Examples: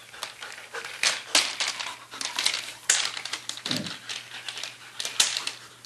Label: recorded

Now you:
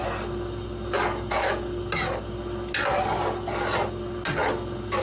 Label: recorded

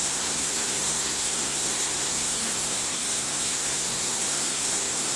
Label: remade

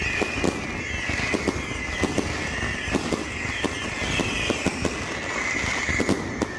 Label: recorded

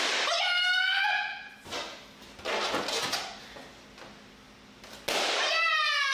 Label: recorded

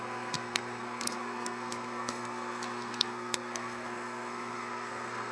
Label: remade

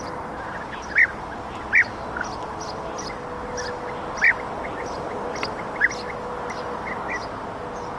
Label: recorded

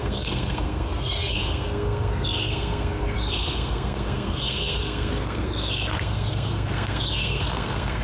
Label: remade